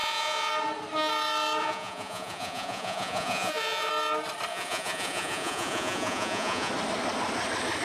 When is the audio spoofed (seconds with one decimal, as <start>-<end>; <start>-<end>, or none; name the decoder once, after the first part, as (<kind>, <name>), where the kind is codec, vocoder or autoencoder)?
0.0-0.5 (vocoder, Vocos); 1.6-3.9; 4.5-6.7

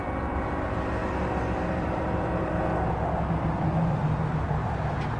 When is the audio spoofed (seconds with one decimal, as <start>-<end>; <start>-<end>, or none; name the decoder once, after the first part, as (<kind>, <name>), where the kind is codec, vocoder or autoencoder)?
0.0-4.6 (vocoder, BigVGAN v2)

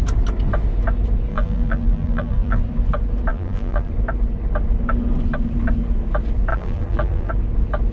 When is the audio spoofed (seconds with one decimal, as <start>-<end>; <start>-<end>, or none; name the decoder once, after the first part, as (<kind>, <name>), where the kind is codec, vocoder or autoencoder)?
1.3-2.6 (vocoder, BigVGAN v2); 3.3-3.9; 6.5-7.3

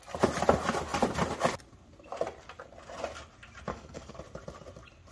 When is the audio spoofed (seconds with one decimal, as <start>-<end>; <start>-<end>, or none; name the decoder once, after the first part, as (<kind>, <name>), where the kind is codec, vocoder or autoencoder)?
3.7-4.2 (codec, SNAC)